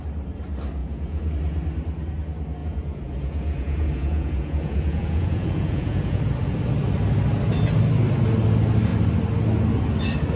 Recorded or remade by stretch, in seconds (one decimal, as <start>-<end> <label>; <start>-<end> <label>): 0.0-0.8 recorded; 0.8-1.3 remade; 1.3-2.6 recorded; 2.6-6.2 remade; 6.2-10.4 recorded